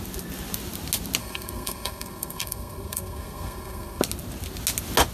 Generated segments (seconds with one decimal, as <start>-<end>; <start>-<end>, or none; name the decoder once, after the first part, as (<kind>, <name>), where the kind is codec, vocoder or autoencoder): 1.2-4.0 (codec, SNAC)